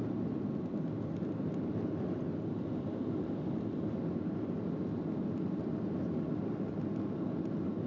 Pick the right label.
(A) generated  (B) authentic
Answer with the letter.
B